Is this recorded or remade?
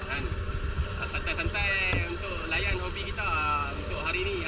recorded